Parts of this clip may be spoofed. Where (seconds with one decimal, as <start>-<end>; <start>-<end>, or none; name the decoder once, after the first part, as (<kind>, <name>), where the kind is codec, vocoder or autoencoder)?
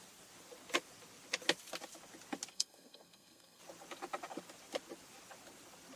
2.5-3.6 (codec, SNAC)